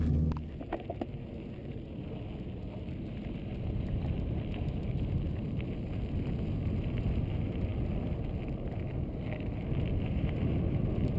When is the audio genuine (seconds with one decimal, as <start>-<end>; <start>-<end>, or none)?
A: 0.0-11.2